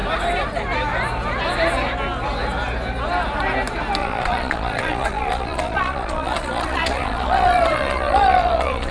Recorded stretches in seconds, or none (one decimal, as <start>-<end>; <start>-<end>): 0.0-4.0